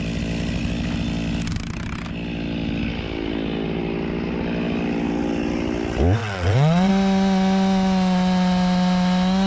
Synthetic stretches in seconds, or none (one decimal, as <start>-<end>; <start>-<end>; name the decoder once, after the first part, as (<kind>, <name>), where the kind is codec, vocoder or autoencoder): 6.2-6.9 (vocoder, WaveNeXt)